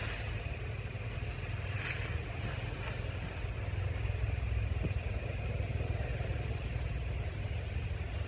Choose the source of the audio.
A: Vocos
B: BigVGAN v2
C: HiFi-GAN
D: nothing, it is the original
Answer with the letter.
D